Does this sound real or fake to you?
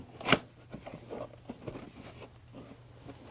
real